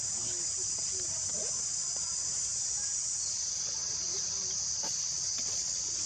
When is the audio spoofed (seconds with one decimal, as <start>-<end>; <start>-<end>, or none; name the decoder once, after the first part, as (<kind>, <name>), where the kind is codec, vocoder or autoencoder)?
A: 2.2-3.2 (vocoder, BigVGAN v2); 3.8-5.0